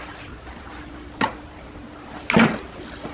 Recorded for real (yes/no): yes